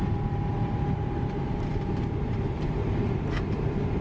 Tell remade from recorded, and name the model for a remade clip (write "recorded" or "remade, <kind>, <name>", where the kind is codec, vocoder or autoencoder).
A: remade, vocoder, BigVGAN v2